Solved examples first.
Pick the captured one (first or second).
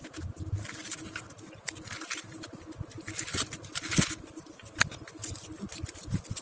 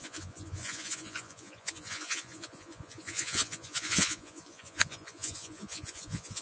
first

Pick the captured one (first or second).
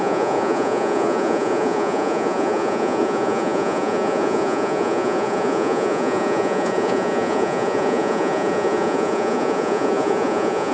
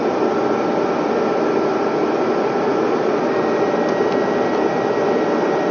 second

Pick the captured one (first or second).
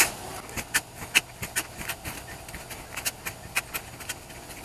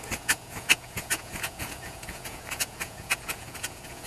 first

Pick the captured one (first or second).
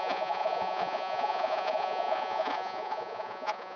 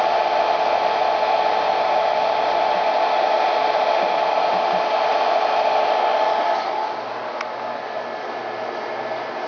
second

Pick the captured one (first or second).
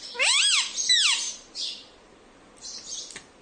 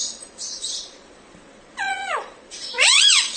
first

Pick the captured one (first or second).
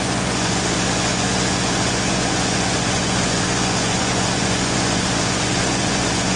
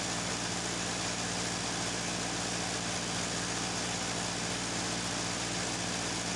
second